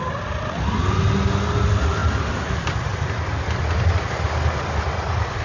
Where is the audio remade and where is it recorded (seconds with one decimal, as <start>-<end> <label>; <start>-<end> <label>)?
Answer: 0.0-5.4 recorded